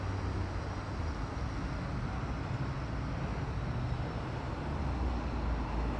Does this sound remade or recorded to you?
recorded